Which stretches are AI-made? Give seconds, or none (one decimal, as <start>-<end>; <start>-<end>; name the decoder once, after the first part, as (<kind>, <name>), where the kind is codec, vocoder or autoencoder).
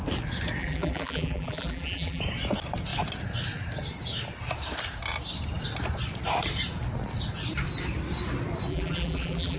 0.6-2.2 (vocoder, BigVGAN v2); 8.7-9.6